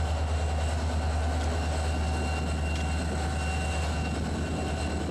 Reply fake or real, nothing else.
real